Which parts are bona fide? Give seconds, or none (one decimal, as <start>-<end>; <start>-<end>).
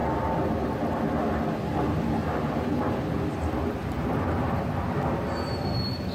0.0-2.2; 3.0-3.8; 4.6-6.1